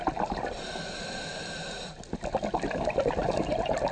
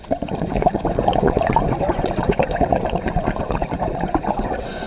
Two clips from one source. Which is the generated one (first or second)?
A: second